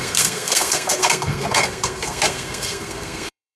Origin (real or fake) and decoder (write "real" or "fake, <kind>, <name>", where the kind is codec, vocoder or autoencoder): fake, codec, SNAC